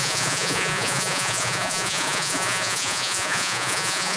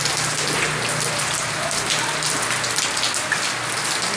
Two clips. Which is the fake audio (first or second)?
first